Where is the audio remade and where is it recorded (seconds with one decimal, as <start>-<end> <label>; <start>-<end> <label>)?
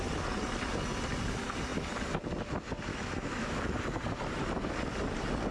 0.0-2.9 recorded; 2.9-3.6 remade; 3.6-5.5 recorded